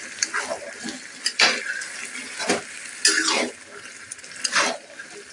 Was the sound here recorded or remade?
recorded